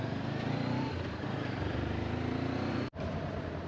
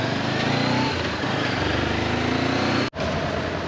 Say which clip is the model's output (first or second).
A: first